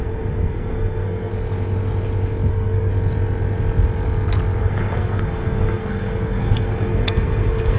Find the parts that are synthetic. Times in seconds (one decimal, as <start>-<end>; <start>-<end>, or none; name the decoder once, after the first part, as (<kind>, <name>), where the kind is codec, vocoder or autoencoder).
0.0-1.3 (codec, SNAC); 2.5-2.9; 4.6-7.8